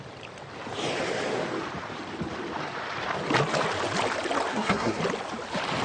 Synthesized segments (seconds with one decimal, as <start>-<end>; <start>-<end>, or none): 4.5-5.0